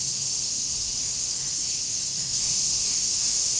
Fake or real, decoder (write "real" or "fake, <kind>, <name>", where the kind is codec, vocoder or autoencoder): fake, autoencoder, DAC-VAE